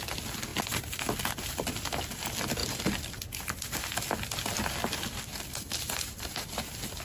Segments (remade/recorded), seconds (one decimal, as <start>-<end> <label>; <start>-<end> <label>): 0.0-2.6 recorded; 2.6-3.2 remade; 3.2-5.3 recorded; 5.3-7.0 remade